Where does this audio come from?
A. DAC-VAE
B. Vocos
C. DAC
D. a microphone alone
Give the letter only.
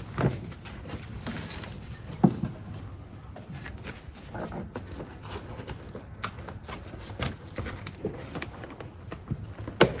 D